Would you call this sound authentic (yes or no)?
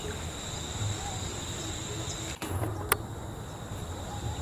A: yes